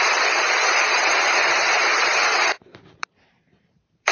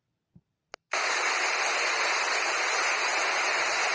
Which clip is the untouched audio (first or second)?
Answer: second